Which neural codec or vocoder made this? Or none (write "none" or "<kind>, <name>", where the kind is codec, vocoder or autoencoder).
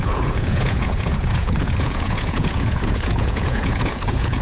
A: vocoder, Vocos